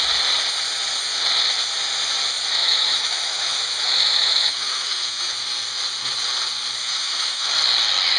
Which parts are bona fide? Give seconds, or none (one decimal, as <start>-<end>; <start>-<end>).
0.0-2.6; 5.3-6.8; 7.5-8.2